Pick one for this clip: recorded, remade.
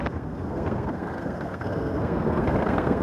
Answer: remade